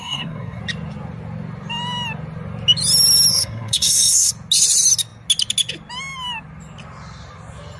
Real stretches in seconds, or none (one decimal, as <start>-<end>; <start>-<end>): 0.6-3.3; 4.3-7.8